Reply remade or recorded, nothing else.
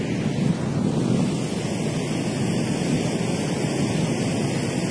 recorded